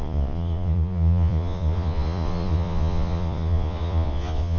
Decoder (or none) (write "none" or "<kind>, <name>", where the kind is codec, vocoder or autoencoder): vocoder, Vocos